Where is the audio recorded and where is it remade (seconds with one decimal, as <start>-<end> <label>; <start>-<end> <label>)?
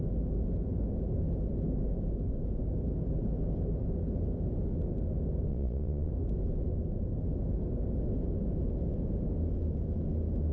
0.0-5.5 recorded; 5.5-6.1 remade; 6.1-10.5 recorded